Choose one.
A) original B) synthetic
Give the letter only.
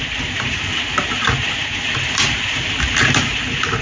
A